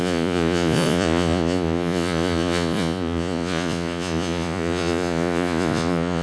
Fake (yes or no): yes